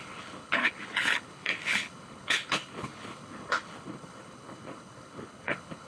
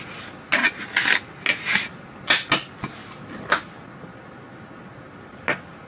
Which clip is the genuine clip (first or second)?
second